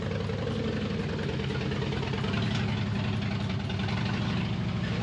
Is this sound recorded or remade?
recorded